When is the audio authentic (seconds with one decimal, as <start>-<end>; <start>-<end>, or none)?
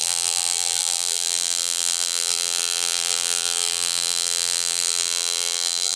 none